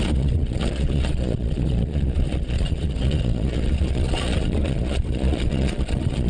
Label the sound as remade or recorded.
remade